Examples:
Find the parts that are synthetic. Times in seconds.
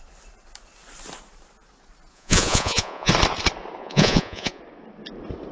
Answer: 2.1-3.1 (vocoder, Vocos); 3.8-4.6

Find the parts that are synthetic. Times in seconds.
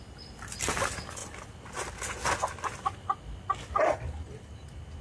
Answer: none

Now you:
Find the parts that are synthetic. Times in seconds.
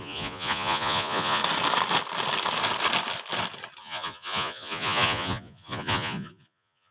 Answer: 0.0-1.4 (vocoder, Vocos); 3.8-6.9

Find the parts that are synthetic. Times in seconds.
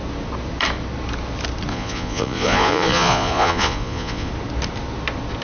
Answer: 1.7-4.3 (vocoder, Vocos)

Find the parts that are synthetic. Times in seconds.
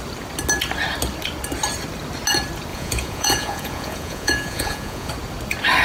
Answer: 2.7-5.1 (vocoder, Vocos)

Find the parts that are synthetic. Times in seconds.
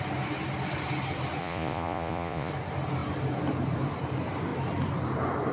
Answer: 1.4-2.5 (vocoder, Vocos)